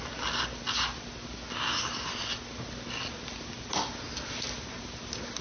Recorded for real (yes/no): yes